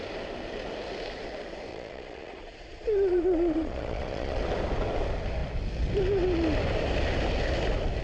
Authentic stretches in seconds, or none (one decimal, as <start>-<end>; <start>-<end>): 0.0-1.7; 4.4-8.0